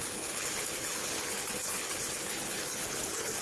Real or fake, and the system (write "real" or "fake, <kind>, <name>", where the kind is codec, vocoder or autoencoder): fake, codec, HILCodec